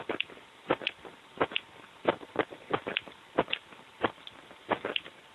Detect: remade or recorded recorded